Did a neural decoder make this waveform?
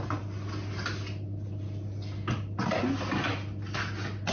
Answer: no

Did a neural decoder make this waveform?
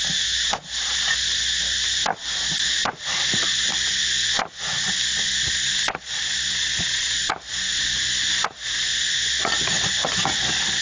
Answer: no